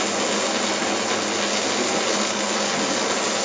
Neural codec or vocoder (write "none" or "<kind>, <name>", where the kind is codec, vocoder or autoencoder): none